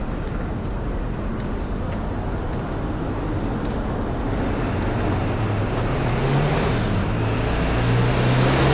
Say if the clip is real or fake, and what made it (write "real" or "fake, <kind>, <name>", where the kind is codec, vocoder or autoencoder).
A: real